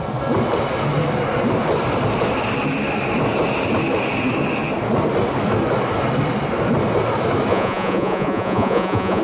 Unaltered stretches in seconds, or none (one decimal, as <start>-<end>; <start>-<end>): 0.0-7.5